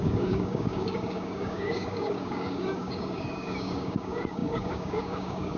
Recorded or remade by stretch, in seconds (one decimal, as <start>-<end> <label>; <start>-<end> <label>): 0.0-5.6 remade

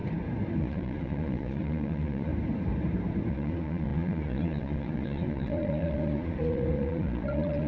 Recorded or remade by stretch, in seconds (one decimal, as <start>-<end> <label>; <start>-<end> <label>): 0.0-0.6 recorded; 0.6-2.3 remade; 2.3-3.3 recorded; 3.3-7.7 remade

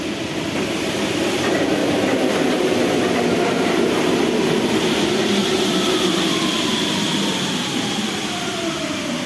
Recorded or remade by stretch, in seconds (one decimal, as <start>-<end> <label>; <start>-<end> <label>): 0.0-1.8 remade; 1.8-3.5 recorded; 3.5-5.4 remade; 5.4-7.5 recorded; 7.5-9.3 remade

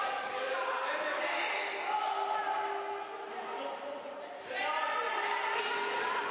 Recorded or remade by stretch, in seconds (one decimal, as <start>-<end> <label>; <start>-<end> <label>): 0.0-0.5 remade; 0.5-6.3 recorded

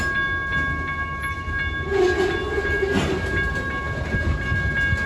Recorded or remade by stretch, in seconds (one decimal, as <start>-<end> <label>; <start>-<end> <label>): 0.0-5.1 recorded

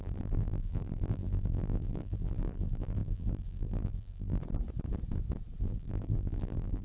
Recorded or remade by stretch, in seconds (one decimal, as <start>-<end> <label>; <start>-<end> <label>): 0.0-4.4 remade; 4.4-5.6 recorded; 5.6-6.8 remade